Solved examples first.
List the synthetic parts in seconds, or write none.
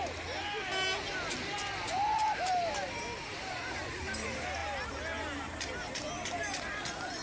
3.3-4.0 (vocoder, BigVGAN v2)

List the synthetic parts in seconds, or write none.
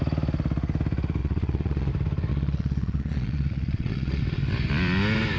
1.2-1.9 (vocoder, Vocos); 2.3-4.2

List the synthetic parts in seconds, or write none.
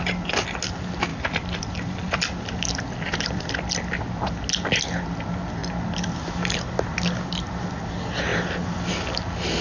1.1-4.0 (vocoder, BigVGAN v2)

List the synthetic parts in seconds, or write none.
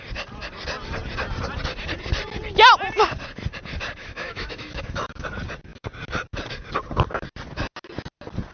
4.0-5.3 (autoencoder, DAC-VAE)